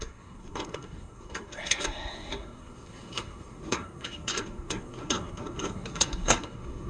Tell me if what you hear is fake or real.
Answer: fake